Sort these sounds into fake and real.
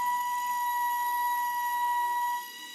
fake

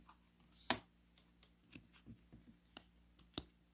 real